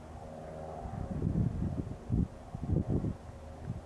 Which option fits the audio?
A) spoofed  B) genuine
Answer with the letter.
B